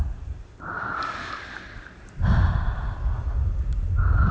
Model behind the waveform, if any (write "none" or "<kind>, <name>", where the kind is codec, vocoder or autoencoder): none